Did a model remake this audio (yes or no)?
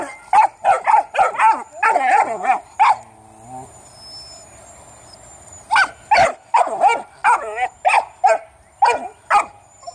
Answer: no